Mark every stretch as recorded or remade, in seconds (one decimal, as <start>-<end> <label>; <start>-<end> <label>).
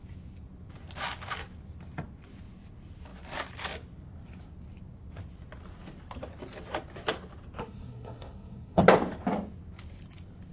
0.0-7.6 recorded; 7.6-8.8 remade; 8.8-10.5 recorded